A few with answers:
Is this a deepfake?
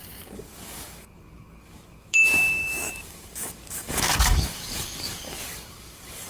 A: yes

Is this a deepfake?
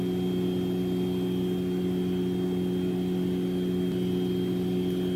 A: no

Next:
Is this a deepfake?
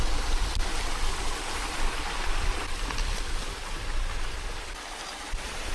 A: no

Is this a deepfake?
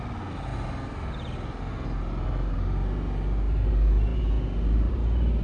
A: no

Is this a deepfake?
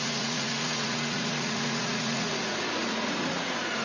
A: yes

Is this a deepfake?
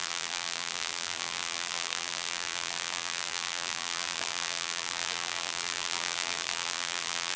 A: yes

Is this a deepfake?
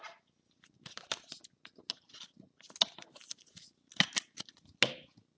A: no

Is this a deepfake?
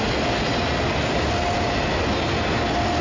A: no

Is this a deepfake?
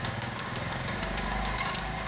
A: yes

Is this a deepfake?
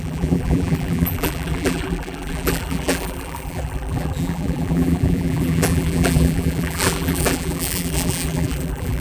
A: yes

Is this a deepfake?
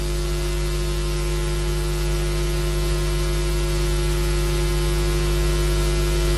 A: no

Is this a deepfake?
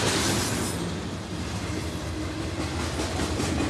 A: no